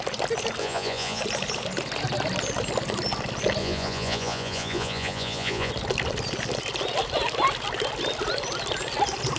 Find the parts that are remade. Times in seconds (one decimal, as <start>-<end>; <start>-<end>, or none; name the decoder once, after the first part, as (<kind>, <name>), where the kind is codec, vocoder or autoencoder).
0.6-1.2 (vocoder, Vocos); 3.6-5.7